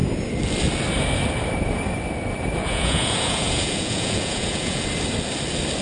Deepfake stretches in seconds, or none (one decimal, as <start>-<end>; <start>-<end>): 2.6-4.8